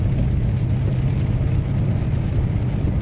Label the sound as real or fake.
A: real